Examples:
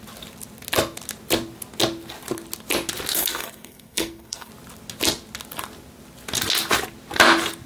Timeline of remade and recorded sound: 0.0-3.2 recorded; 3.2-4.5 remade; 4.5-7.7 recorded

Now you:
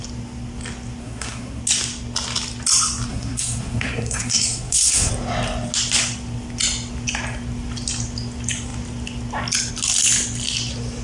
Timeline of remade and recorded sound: 0.0-1.0 recorded; 1.0-1.6 remade; 1.6-3.1 recorded; 3.1-5.1 remade; 5.1-11.0 recorded

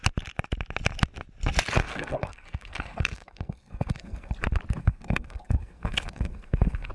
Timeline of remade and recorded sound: 0.0-1.8 recorded; 1.8-4.3 remade; 4.3-4.8 recorded; 4.8-6.9 remade